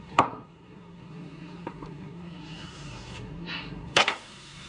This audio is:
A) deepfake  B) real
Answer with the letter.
A